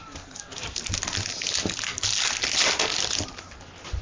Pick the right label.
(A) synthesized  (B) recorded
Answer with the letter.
B